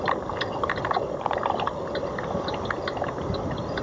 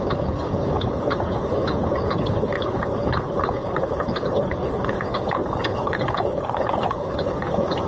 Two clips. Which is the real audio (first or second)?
first